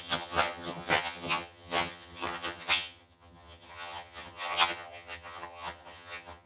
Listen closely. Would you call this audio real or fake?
fake